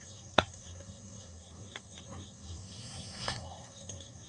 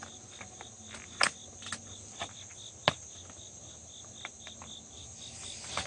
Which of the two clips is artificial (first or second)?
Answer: first